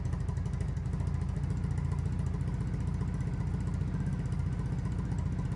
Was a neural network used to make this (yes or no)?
no